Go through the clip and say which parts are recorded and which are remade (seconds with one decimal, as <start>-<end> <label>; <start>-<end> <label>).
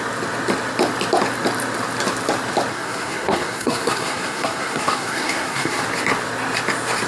0.0-2.7 recorded; 2.7-5.8 remade; 5.8-7.1 recorded